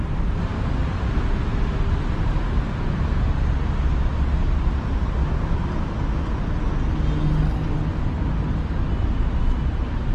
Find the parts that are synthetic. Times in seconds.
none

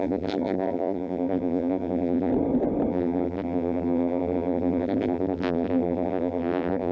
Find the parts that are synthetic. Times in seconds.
0.0-2.3 (vocoder, BigVGAN v2); 2.9-6.9

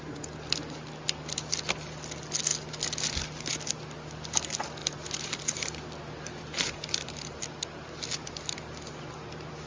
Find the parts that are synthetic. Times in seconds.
4.8-7.4 (vocoder, BigVGAN v2)